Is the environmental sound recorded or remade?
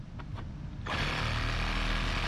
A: recorded